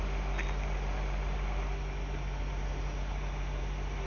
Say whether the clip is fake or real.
real